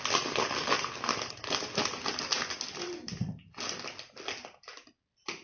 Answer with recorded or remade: recorded